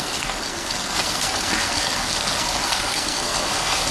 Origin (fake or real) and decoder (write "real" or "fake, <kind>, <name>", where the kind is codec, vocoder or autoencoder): fake, codec, SNAC